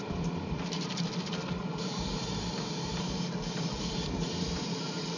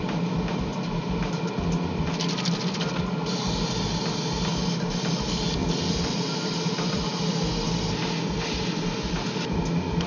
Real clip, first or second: second